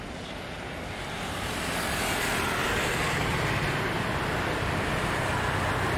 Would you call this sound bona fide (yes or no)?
no